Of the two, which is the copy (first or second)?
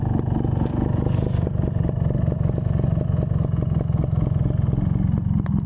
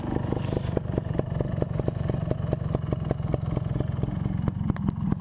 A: second